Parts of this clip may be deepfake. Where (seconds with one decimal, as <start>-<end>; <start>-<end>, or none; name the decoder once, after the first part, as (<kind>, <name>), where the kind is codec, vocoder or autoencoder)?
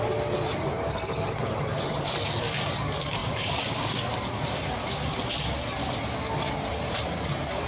0.5-2.1 (vocoder, BigVGAN v2); 3.2-4.0